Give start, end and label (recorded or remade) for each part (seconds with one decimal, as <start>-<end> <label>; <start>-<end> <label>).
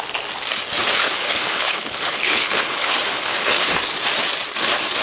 0.0-0.8 recorded; 0.8-3.8 remade; 3.8-5.0 recorded